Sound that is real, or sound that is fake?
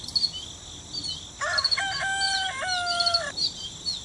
real